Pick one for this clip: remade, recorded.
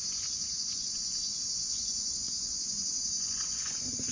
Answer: remade